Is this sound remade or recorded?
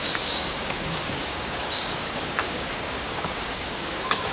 remade